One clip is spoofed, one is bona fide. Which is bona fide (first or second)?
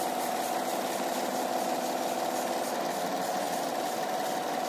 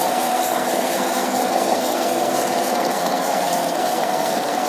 first